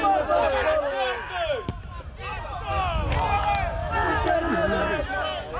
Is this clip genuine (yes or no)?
yes